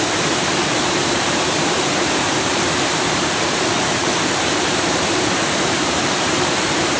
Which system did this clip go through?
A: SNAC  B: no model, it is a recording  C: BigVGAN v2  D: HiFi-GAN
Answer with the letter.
C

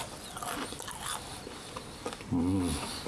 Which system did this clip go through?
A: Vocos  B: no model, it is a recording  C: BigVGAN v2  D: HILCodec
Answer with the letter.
B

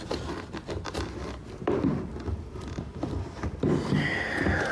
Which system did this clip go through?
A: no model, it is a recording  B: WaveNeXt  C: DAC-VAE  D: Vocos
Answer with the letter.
A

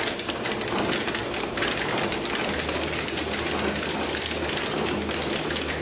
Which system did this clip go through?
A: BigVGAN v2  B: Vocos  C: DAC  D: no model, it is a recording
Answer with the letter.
D